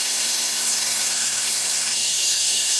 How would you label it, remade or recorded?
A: remade